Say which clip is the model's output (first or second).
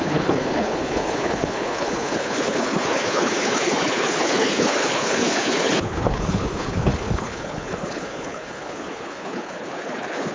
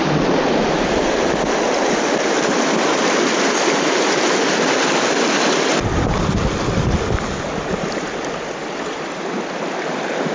first